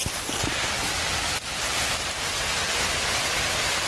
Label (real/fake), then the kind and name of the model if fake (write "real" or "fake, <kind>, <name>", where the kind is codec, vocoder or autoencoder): fake, vocoder, BigVGAN v2